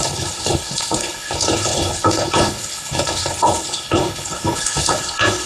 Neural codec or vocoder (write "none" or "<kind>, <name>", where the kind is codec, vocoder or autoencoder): codec, HILCodec